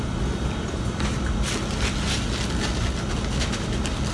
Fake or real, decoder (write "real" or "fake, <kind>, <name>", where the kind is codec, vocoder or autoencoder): real